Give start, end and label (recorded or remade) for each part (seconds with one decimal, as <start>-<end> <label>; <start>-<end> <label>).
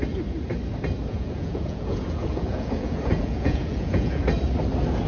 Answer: 0.0-1.1 recorded; 1.1-4.2 remade; 4.2-5.1 recorded